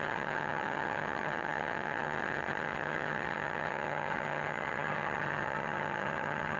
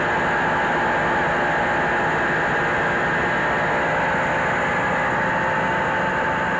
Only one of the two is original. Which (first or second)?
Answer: second